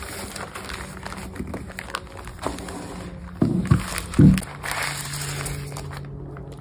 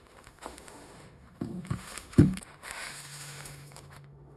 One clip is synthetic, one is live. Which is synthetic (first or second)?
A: second